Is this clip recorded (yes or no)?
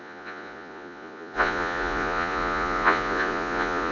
no